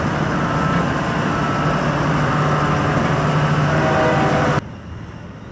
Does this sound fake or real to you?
real